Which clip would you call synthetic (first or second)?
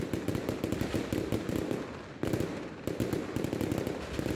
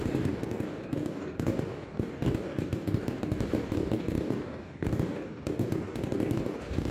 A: second